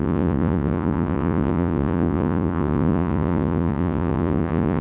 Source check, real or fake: fake